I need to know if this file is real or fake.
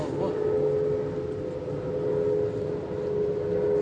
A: real